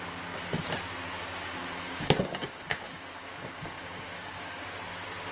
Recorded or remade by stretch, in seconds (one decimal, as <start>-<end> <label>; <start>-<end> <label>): 0.0-1.6 recorded; 1.6-4.6 remade; 4.6-5.3 recorded